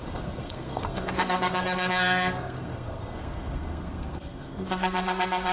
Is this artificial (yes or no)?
yes